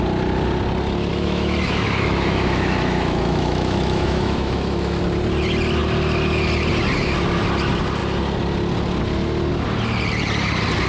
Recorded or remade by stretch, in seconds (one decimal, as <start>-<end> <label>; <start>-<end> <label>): 0.0-1.1 recorded; 1.1-5.0 remade; 5.0-10.9 recorded